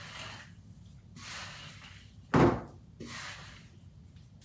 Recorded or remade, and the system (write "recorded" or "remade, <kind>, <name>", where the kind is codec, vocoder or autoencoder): recorded